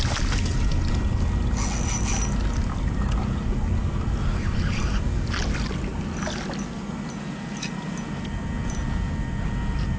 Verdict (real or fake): real